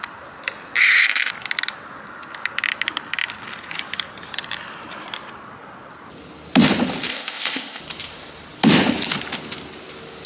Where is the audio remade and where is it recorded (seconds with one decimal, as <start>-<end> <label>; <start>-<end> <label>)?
0.0-0.8 recorded; 0.8-1.3 remade; 1.3-7.1 recorded; 7.1-7.8 remade; 7.8-10.3 recorded